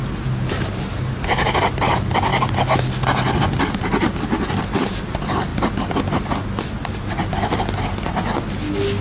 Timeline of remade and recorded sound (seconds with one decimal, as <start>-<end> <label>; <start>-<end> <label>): 0.0-9.0 recorded